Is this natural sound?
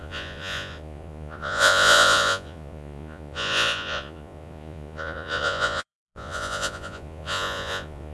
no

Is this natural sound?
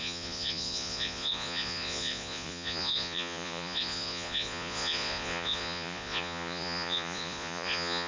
no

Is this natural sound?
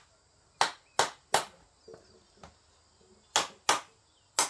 yes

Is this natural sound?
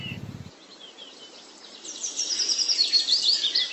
yes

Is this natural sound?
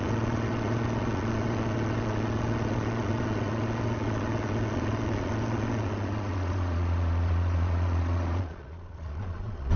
no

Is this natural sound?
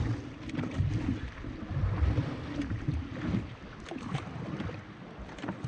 yes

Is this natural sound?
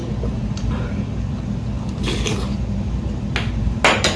yes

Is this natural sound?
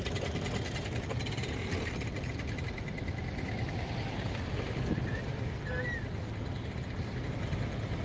yes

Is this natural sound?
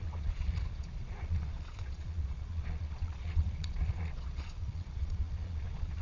no